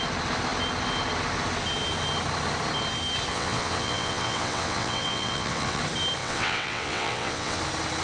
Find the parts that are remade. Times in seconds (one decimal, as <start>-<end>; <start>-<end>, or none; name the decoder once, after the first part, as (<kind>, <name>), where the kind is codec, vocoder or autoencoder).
3.3-5.8 (vocoder, WaveNeXt); 6.2-7.6